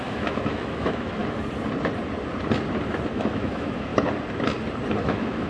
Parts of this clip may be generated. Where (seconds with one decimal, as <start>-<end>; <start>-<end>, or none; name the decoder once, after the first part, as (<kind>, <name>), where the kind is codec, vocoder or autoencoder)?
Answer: 0.0-1.2 (autoencoder, DAC-VAE); 3.1-3.9; 5.0-5.5